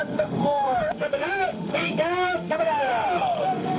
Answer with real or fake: fake